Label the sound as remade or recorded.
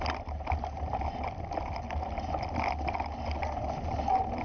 recorded